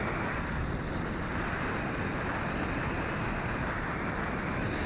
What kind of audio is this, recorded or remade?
recorded